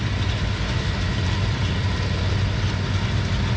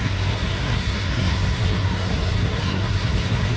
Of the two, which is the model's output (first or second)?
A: second